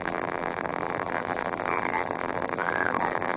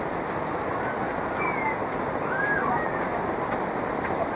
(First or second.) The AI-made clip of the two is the first